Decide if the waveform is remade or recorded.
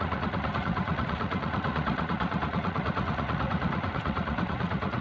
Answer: remade